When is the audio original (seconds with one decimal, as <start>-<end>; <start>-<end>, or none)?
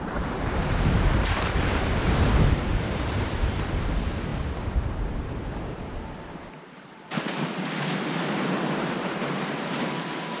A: none